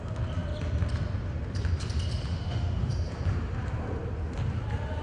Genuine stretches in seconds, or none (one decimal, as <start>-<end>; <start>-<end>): 0.0-2.3; 2.9-5.0